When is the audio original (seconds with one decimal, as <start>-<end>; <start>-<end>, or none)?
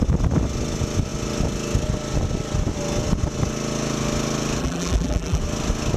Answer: 0.0-4.6; 5.4-6.0